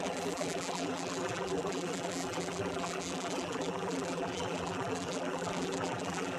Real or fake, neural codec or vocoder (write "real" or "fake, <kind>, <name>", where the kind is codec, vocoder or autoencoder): fake, vocoder, BigVGAN v2